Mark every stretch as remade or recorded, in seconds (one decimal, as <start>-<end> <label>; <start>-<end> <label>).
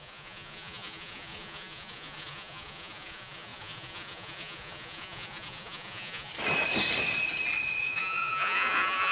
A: 0.0-6.3 remade; 6.3-7.8 recorded; 7.8-9.1 remade